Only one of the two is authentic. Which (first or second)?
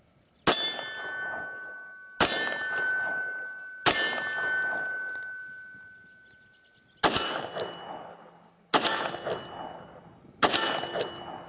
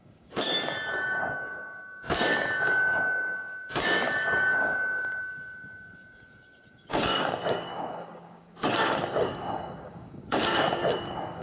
first